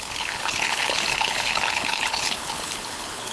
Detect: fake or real fake